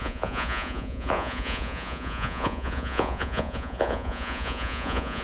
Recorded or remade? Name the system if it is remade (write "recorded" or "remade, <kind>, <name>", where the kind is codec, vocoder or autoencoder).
remade, vocoder, Vocos